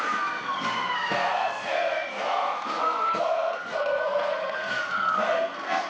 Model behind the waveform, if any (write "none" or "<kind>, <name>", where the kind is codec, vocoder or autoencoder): codec, SNAC